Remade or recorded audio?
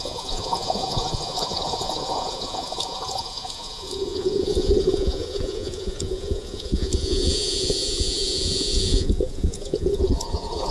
remade